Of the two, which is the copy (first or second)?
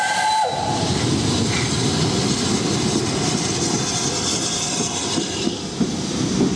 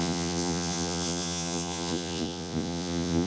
second